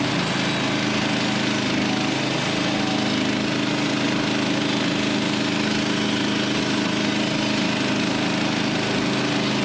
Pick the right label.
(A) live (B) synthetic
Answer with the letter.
A